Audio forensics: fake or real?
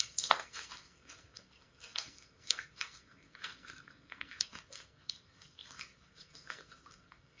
fake